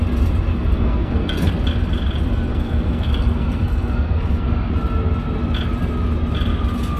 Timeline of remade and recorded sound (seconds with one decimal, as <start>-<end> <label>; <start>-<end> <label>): 0.0-0.5 recorded; 0.5-1.5 remade; 1.5-2.5 recorded; 2.5-4.7 remade; 4.7-7.0 recorded